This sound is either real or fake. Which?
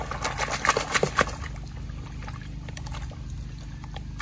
real